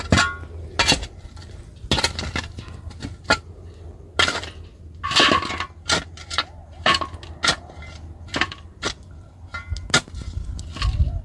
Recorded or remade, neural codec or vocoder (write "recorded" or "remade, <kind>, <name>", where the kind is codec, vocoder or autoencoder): recorded